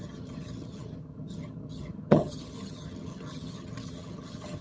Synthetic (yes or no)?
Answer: yes